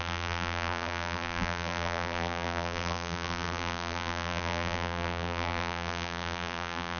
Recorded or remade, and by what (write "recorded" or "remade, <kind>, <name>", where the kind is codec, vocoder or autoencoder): remade, vocoder, BigVGAN v2